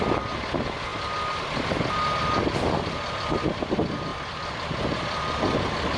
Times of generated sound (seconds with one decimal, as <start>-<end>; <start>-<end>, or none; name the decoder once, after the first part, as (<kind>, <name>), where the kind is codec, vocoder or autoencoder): 4.1-5.6 (vocoder, BigVGAN v2)